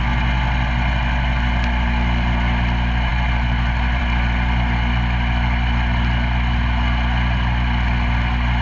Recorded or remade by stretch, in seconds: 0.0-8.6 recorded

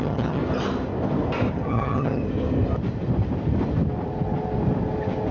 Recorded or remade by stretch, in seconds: 0.0-0.4 remade; 0.4-1.5 recorded; 1.5-2.2 remade; 2.2-5.3 recorded

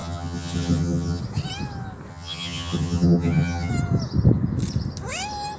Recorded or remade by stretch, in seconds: 0.0-1.2 remade; 1.2-2.1 recorded; 2.1-3.7 remade; 3.7-5.6 recorded